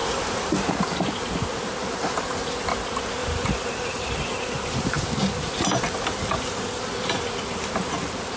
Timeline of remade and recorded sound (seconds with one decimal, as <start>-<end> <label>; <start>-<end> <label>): 0.0-8.4 recorded